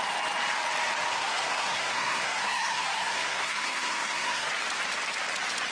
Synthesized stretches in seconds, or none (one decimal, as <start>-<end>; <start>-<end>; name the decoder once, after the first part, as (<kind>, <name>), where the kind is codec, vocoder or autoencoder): 1.1-4.5 (codec, SNAC)